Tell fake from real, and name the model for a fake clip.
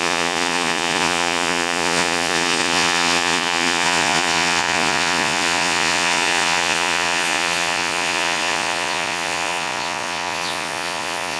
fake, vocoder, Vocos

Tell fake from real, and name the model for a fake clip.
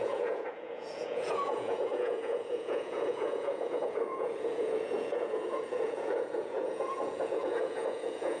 fake, vocoder, Vocos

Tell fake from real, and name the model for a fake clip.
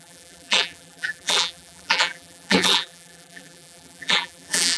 fake, vocoder, BigVGAN v2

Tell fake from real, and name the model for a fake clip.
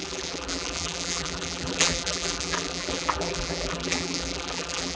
fake, vocoder, BigVGAN v2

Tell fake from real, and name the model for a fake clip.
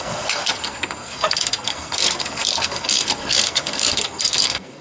fake, codec, SNAC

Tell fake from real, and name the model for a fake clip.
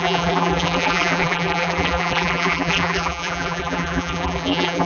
fake, vocoder, BigVGAN v2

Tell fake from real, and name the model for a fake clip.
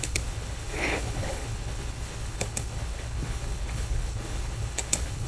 fake, codec, HILCodec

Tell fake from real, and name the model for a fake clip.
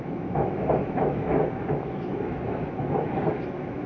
fake, autoencoder, DAC-VAE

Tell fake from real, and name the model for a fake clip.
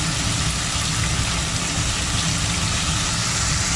real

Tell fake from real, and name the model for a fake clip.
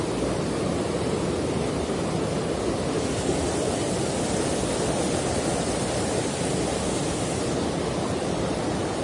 real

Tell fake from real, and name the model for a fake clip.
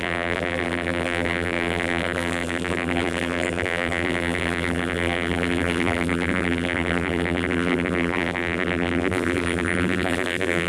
fake, vocoder, BigVGAN v2